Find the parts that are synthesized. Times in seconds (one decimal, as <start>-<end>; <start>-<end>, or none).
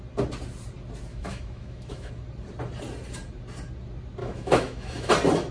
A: 1.1-2.1; 4.2-5.1